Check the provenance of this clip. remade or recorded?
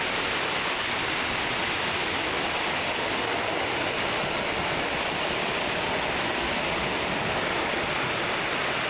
recorded